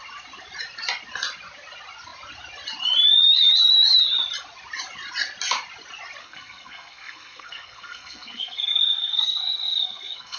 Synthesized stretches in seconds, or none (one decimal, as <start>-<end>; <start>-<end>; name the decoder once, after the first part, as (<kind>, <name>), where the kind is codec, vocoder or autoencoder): 6.2-10.4 (codec, SNAC)